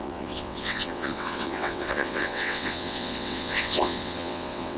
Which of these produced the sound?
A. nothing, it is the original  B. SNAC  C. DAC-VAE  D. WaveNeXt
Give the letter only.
D